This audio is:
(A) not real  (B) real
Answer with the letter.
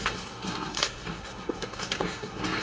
A